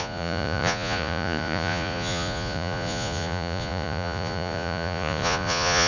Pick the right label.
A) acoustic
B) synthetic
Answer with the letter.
B